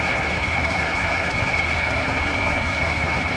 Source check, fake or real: fake